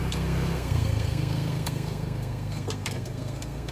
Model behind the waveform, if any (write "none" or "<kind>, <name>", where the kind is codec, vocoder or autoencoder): codec, SNAC